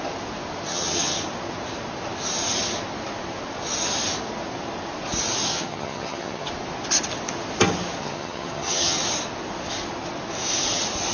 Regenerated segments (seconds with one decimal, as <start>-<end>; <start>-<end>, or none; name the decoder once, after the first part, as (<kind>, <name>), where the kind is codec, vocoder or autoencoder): 0.7-1.2 (vocoder, HiFi-GAN); 5.5-6.5; 8.0-9.0